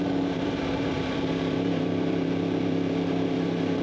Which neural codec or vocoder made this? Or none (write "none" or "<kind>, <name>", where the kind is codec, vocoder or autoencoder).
vocoder, BigVGAN v2